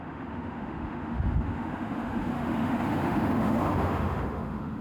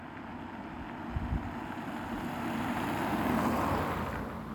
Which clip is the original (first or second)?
second